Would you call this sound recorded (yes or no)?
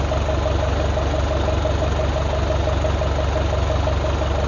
yes